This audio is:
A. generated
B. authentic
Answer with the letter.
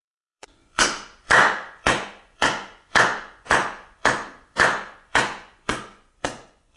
A